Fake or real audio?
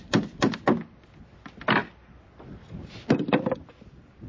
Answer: real